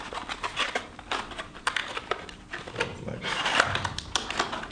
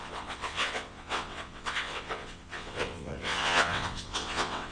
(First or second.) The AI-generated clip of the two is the second